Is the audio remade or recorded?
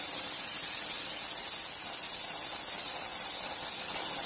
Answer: recorded